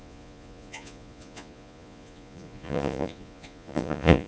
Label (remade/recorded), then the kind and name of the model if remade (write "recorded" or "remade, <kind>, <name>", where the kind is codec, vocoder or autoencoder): remade, vocoder, Vocos